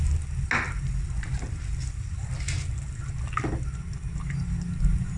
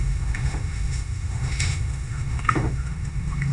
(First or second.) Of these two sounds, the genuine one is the first